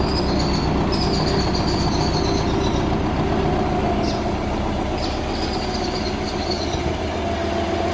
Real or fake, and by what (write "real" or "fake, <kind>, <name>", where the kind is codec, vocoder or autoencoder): real